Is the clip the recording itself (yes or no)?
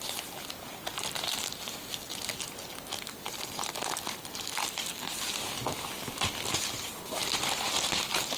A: yes